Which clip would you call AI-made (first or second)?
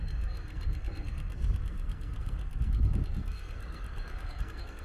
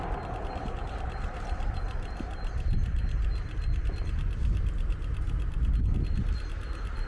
first